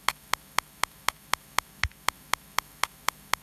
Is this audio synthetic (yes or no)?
yes